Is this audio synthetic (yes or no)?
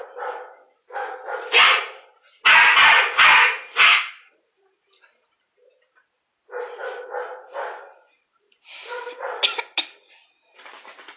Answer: no